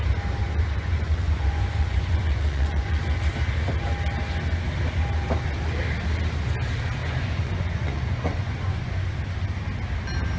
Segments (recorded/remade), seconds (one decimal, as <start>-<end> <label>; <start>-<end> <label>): 0.0-0.4 recorded; 0.4-3.0 remade; 3.0-7.0 recorded; 7.0-9.0 remade; 9.0-10.4 recorded